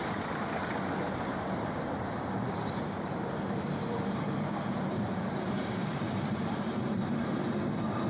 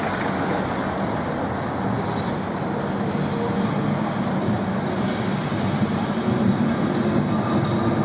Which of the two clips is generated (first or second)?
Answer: first